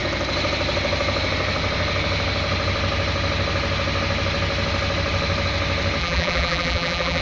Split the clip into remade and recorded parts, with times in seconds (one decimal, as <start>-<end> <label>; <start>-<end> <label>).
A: 0.0-6.0 recorded; 6.0-7.2 remade